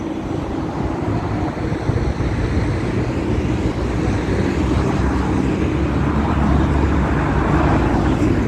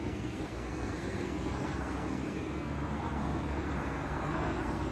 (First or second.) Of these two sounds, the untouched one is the first